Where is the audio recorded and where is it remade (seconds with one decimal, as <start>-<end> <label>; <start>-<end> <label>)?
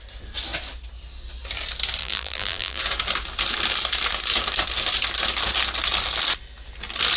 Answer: 0.0-2.0 recorded; 2.0-2.8 remade; 2.8-7.2 recorded